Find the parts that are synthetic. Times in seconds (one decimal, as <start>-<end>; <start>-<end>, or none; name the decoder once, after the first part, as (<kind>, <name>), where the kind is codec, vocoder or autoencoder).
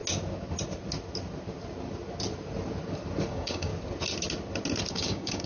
3.3-3.7 (codec, DAC); 4.9-5.5